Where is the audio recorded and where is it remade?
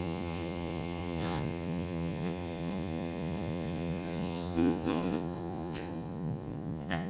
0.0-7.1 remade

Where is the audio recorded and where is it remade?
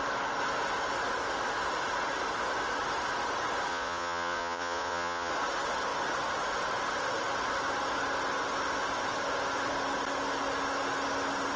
0.0-3.7 recorded; 3.7-5.3 remade; 5.3-11.6 recorded